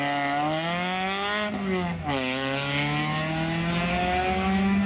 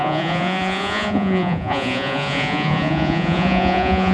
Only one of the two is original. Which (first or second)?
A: first